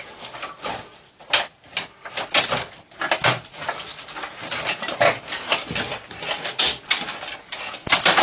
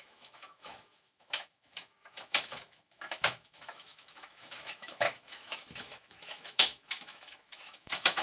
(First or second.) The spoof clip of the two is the second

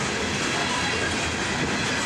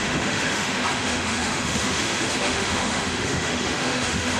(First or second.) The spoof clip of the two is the second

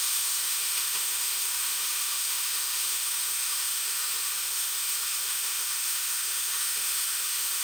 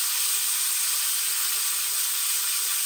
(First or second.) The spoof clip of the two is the first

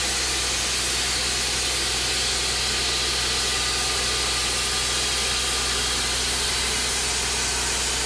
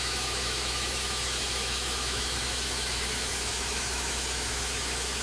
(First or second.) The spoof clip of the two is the second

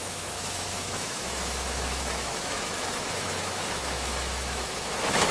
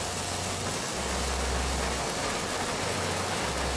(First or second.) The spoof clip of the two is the first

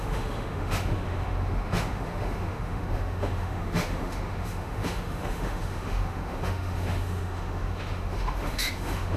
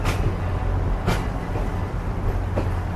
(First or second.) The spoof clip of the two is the first